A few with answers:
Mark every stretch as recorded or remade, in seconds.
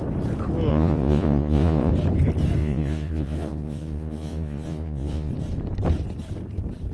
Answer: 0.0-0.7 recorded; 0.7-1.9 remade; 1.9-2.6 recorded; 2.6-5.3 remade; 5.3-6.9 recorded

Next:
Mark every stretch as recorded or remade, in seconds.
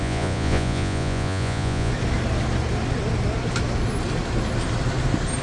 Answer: 0.0-1.9 remade; 1.9-5.4 recorded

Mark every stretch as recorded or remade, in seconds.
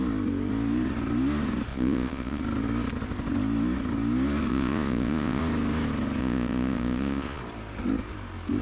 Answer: 0.0-1.7 recorded; 1.7-2.4 remade; 2.4-4.5 recorded; 4.5-5.4 remade; 5.4-6.2 recorded; 6.2-7.4 remade; 7.4-8.6 recorded